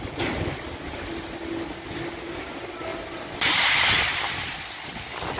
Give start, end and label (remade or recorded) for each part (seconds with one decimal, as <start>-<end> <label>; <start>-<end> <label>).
0.0-2.9 recorded; 2.9-4.0 remade; 4.0-5.4 recorded